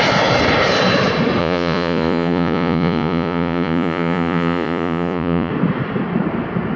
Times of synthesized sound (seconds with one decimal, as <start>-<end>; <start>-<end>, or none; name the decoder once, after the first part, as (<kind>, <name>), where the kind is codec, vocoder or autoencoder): 1.4-5.5 (vocoder, Vocos)